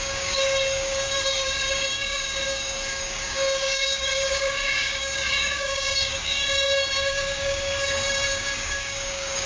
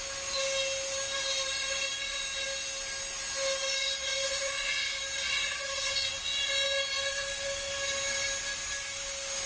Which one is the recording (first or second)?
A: second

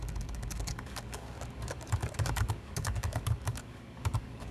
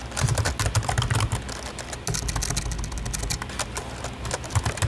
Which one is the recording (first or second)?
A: second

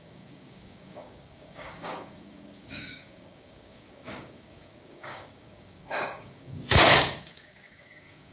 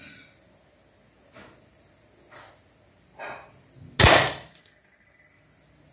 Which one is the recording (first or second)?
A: second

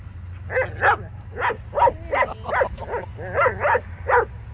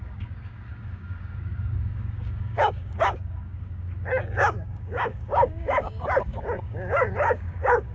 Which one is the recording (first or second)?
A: first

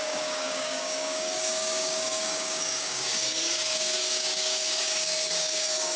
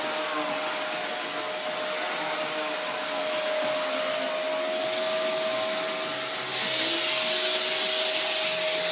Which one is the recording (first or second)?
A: second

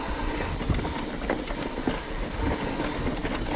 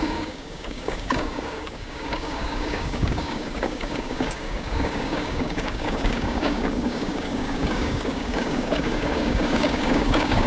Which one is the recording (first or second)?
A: first